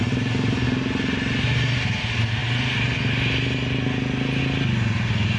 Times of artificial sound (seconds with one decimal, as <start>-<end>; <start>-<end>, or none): none